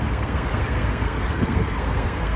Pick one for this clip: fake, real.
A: fake